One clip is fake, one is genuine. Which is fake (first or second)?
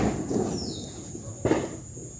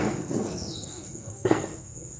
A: second